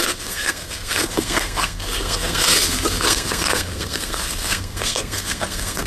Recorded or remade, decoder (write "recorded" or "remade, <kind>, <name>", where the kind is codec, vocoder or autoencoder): remade, codec, SNAC